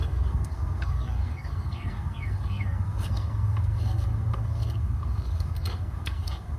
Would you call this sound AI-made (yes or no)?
yes